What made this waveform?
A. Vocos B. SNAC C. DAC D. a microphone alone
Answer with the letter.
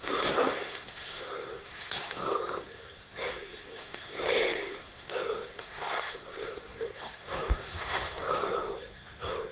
B